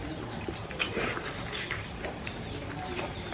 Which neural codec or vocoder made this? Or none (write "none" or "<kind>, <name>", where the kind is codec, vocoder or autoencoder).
none